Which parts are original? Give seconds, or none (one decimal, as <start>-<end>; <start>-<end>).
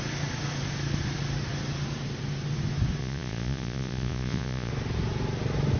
0.0-3.0; 4.7-5.8